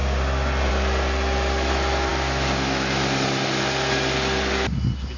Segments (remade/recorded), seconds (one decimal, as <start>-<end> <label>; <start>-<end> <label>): 0.0-5.2 recorded